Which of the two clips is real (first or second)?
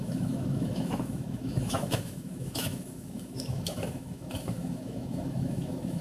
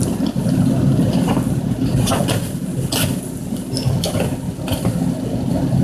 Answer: second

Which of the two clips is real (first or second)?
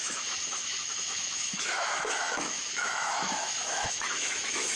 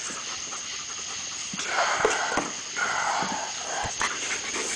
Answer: second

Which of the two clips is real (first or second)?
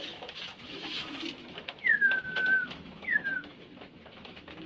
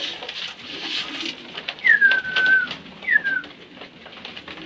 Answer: second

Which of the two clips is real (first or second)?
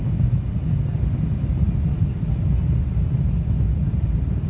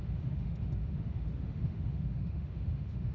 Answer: first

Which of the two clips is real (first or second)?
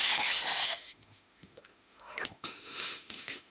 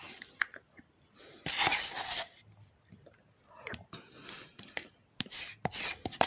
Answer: second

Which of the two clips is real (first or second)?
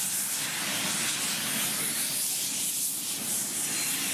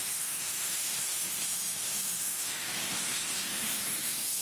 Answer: first